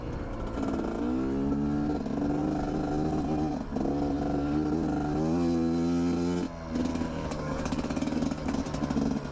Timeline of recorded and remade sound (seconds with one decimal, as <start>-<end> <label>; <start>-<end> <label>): 0.0-6.9 recorded; 6.9-8.6 remade; 8.6-9.3 recorded